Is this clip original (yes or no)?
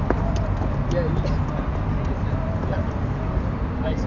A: yes